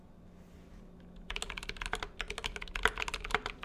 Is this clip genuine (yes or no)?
yes